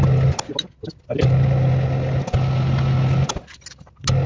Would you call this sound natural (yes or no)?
yes